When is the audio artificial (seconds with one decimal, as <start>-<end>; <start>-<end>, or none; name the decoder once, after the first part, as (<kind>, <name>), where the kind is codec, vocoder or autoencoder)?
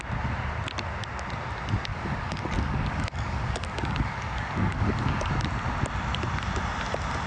1.9-5.3 (codec, DAC)